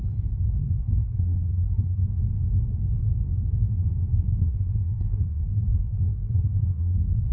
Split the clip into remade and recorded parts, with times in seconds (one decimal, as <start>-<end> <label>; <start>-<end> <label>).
0.0-0.5 recorded; 0.5-2.0 remade; 2.0-4.4 recorded; 4.4-7.3 remade